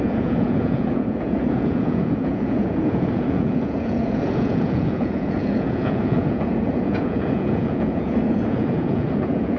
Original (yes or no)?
no